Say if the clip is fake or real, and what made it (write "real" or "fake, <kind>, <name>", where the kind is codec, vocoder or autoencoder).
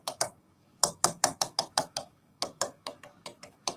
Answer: fake, codec, DAC